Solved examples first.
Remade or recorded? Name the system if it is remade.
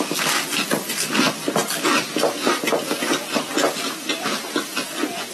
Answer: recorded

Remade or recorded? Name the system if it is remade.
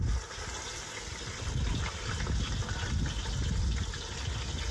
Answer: recorded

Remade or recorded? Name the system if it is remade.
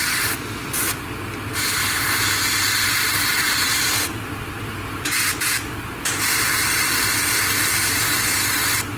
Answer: recorded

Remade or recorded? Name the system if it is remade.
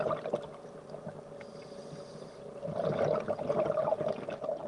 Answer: recorded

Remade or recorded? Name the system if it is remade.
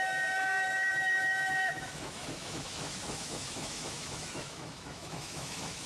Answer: remade, autoencoder, DAC-VAE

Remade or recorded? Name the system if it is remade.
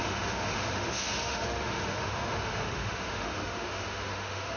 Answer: remade, autoencoder, DAC-VAE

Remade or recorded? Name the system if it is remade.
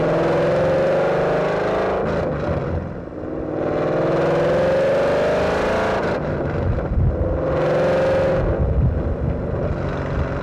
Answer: recorded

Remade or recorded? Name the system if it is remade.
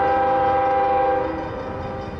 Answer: recorded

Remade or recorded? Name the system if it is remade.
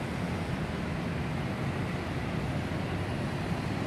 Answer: recorded